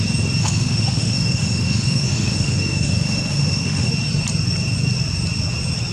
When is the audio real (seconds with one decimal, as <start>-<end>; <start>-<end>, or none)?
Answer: 0.0-0.4; 3.9-5.9